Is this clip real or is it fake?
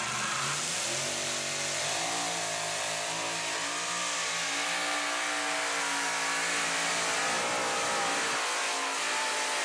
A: real